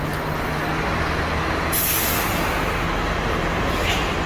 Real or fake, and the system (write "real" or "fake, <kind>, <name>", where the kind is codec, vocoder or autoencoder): real